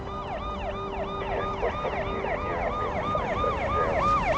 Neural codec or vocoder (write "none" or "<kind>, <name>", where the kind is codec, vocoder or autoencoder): none